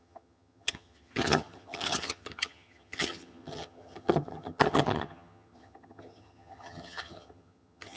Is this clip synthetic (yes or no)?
yes